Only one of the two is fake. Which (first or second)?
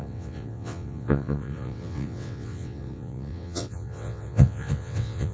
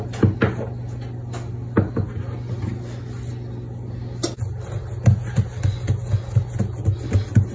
first